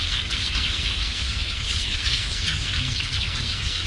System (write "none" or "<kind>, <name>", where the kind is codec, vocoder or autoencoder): codec, SNAC